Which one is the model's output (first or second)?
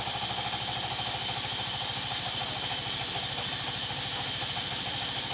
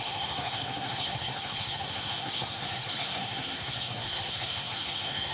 second